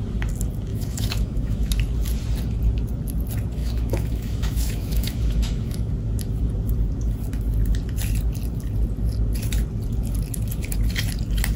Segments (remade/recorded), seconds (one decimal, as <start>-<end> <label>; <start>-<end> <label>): 0.0-0.7 recorded; 0.7-1.7 remade; 1.7-3.6 recorded; 3.6-5.9 remade; 5.9-11.6 recorded